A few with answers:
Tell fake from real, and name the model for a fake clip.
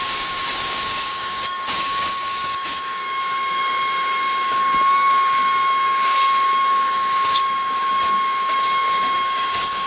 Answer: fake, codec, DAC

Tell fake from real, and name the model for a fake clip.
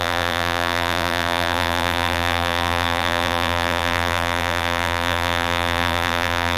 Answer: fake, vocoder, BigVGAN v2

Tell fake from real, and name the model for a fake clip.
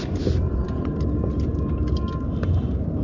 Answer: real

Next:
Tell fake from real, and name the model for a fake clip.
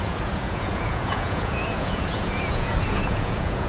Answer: fake, vocoder, Vocos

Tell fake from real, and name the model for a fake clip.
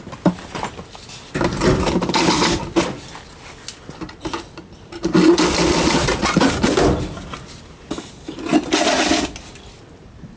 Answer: real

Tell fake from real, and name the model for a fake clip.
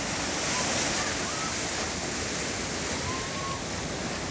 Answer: real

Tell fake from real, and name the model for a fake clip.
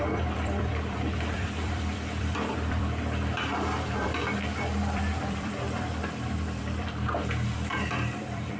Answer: fake, vocoder, BigVGAN v2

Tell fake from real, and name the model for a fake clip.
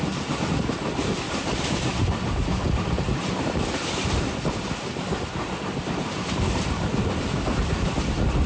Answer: fake, vocoder, BigVGAN v2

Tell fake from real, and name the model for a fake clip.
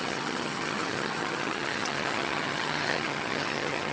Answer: fake, vocoder, HiFi-GAN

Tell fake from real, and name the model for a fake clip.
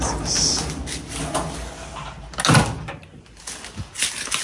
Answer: real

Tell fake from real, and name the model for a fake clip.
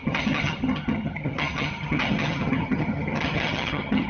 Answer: fake, vocoder, HiFi-GAN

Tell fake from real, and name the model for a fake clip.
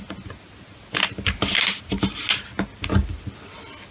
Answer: real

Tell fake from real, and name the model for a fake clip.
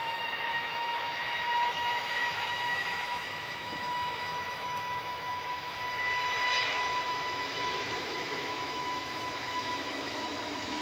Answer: fake, autoencoder, DAC-VAE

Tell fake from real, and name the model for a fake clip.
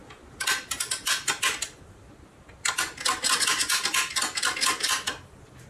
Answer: real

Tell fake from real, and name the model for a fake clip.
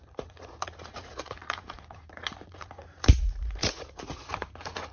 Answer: fake, vocoder, Vocos